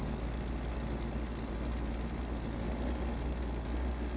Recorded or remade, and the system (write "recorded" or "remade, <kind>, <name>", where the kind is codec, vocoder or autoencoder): recorded